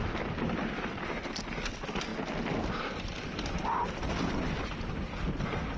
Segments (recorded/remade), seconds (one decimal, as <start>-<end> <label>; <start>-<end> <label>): 0.0-5.8 recorded